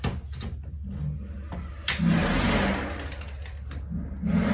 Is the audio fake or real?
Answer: real